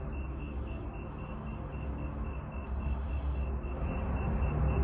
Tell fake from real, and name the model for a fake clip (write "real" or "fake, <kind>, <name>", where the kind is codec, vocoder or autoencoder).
real